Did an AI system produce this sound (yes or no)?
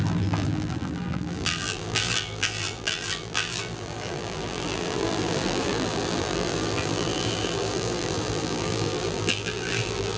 yes